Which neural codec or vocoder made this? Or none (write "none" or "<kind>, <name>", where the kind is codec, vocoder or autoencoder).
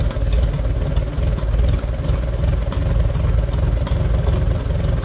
none